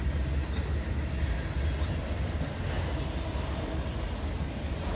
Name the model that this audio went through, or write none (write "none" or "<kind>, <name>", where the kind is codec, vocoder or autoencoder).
none